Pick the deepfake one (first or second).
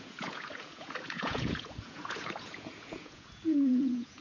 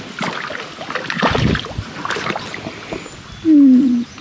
first